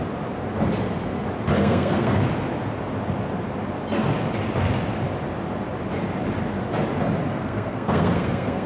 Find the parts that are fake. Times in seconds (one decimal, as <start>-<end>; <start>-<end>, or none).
1.6-2.2; 7.3-8.7